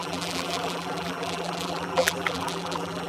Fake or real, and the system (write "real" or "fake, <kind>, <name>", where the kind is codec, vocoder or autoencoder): fake, vocoder, BigVGAN v2